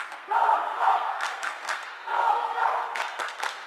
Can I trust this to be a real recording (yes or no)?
no